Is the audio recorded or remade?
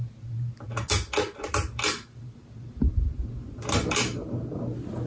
recorded